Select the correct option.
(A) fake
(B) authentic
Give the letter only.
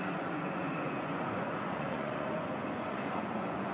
A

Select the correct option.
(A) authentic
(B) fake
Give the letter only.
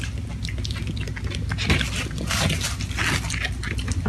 A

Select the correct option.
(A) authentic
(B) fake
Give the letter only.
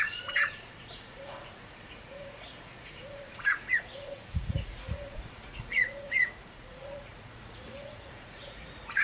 B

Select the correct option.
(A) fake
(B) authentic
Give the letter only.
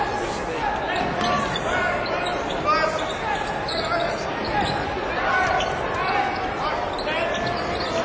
B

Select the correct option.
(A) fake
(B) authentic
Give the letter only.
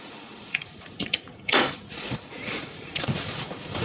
A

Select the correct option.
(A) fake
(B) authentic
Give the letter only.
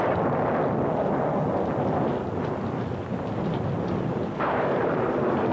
B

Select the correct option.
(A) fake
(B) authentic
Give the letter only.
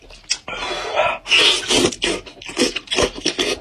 B